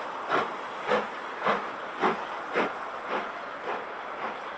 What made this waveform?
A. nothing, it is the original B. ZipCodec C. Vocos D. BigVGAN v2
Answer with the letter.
A